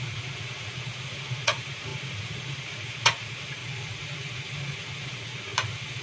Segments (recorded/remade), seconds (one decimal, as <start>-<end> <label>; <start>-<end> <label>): 0.0-3.6 remade; 3.6-5.1 recorded; 5.1-5.5 remade; 5.5-6.0 recorded